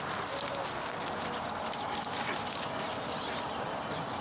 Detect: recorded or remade recorded